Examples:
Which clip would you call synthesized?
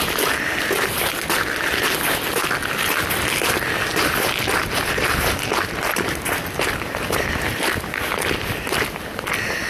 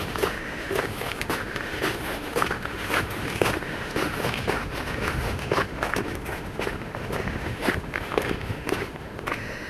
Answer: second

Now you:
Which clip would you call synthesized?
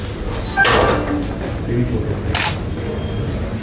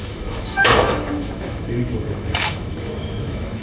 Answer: second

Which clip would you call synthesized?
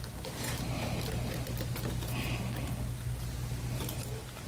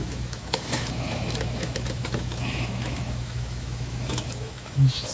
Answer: second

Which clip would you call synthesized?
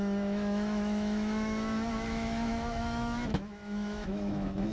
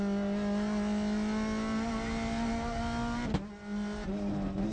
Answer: first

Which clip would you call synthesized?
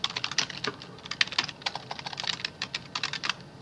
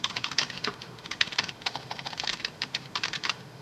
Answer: second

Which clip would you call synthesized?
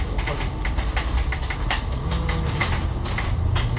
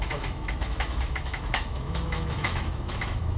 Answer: second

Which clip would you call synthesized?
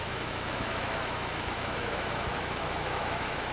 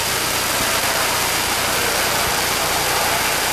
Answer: first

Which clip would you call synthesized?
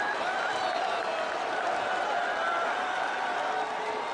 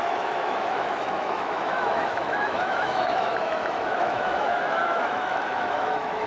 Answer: second